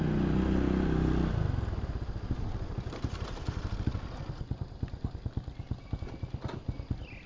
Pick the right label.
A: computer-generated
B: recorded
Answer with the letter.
B